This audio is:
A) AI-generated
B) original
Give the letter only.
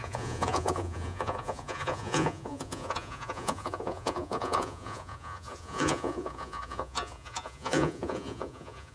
A